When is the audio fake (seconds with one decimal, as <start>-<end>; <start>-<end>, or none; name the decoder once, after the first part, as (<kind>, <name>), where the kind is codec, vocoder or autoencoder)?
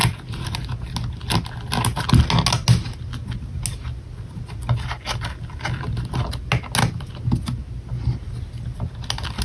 none